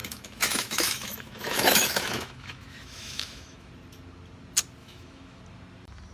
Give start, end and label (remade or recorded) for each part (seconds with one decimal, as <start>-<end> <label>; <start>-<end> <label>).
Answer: 0.0-3.7 remade; 3.7-4.8 recorded; 4.8-5.4 remade; 5.4-6.1 recorded